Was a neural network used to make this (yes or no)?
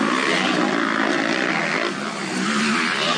no